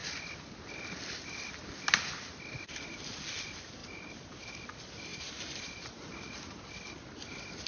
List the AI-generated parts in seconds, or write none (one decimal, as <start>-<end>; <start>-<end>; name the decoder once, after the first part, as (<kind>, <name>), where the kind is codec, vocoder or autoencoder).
3.8-4.3 (vocoder, BigVGAN v2); 5.1-5.9